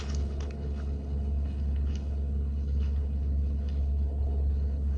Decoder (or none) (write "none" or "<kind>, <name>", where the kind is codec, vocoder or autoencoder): codec, HILCodec